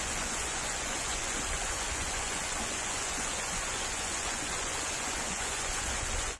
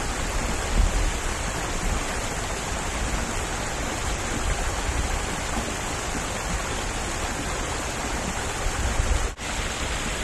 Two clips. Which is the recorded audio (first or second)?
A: second